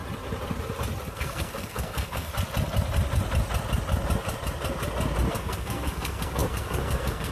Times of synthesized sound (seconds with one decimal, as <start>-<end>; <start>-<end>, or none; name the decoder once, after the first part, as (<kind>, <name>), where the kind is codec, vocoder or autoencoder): 1.1-2.3 (codec, SNAC); 5.3-7.3